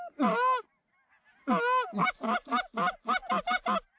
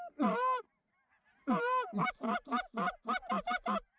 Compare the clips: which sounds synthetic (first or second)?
second